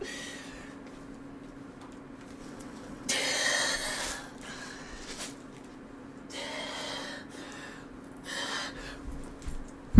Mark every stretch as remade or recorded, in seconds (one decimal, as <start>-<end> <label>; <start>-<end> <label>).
0.0-2.4 recorded; 2.4-3.1 remade; 3.1-4.5 recorded; 4.5-5.2 remade; 5.2-10.0 recorded